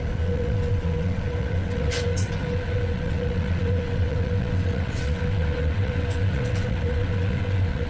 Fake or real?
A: fake